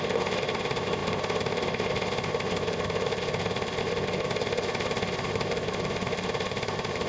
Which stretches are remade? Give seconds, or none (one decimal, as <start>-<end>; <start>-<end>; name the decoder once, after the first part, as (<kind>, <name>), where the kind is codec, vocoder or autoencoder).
0.0-7.1 (codec, ZipCodec)